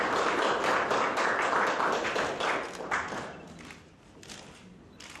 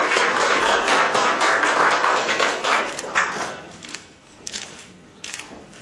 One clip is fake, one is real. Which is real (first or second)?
first